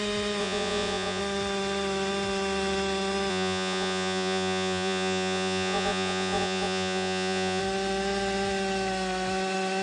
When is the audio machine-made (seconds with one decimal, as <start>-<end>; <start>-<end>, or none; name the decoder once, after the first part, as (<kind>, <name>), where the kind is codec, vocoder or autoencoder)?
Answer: 0.4-1.2 (vocoder, Vocos); 3.3-7.6